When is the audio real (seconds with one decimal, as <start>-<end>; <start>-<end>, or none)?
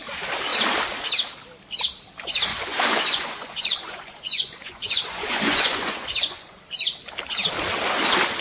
0.0-2.5; 6.6-8.4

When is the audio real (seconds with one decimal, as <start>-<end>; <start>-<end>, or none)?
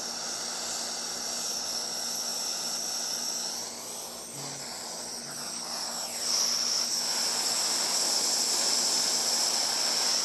0.0-10.2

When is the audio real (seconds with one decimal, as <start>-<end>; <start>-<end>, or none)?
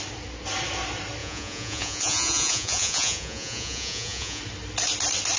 0.0-1.2; 4.4-5.4